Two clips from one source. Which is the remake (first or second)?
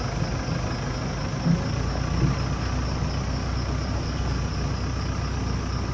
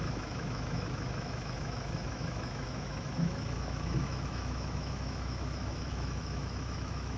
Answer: second